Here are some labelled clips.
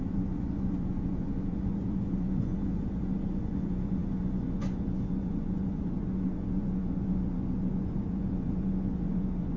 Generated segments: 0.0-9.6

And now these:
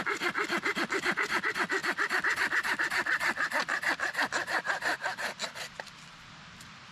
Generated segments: none

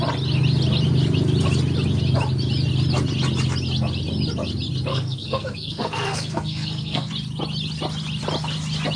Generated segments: 4.9-7.1